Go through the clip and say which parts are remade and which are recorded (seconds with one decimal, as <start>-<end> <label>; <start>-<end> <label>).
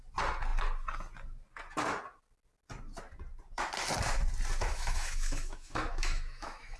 0.0-4.6 recorded; 4.6-6.8 remade